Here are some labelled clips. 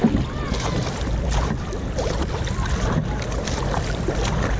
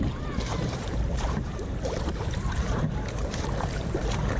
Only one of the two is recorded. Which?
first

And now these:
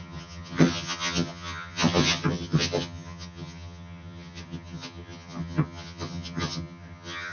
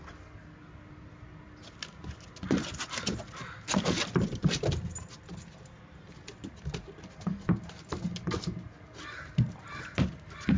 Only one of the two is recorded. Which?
second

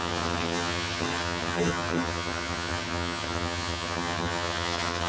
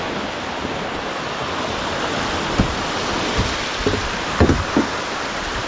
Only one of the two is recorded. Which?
second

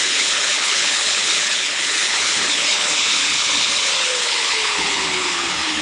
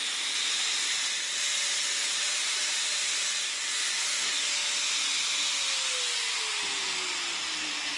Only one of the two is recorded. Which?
second